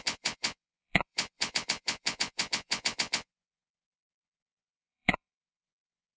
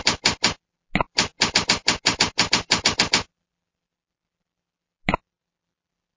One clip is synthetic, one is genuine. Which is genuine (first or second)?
second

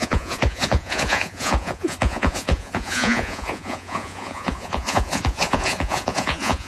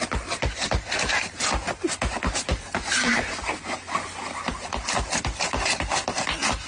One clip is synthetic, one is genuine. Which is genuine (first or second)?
second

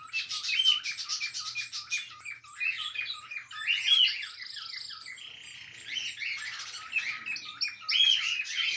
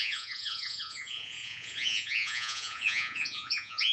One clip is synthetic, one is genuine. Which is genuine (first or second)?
first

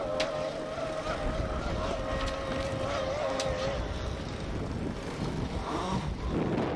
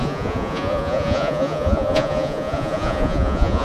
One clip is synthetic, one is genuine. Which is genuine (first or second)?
first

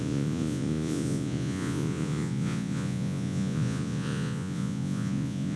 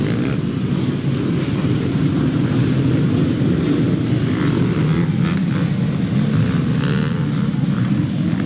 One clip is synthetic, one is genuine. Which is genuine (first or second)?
second